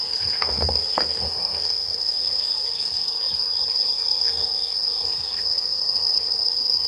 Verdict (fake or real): fake